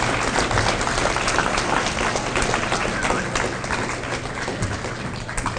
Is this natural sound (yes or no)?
yes